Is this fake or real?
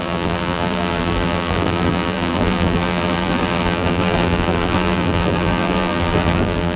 fake